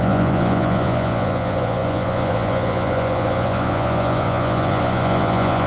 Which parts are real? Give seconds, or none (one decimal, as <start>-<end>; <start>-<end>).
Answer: none